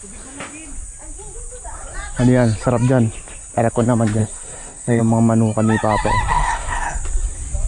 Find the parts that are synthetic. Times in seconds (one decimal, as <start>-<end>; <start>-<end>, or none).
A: 4.2-5.0; 6.3-7.0